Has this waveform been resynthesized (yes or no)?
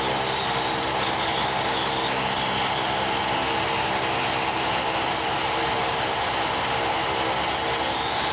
no